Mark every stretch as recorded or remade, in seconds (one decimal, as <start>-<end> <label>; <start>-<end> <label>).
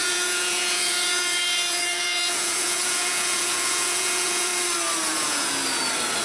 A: 0.0-4.5 remade; 4.5-5.1 recorded; 5.1-5.6 remade; 5.6-6.2 recorded